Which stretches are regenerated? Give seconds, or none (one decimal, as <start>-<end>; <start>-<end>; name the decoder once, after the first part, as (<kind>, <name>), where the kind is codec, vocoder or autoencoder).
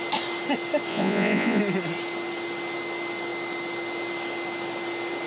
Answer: 0.9-1.6 (vocoder, Vocos)